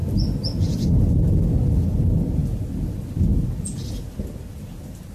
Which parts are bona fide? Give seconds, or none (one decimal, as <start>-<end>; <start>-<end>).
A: 0.0-5.1